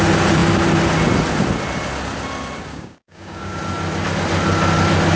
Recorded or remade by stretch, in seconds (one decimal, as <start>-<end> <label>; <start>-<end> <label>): 0.0-2.7 recorded; 2.7-3.6 remade; 3.6-5.2 recorded